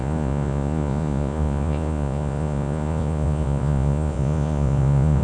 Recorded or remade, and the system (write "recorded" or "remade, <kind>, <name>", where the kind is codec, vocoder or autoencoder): remade, vocoder, Vocos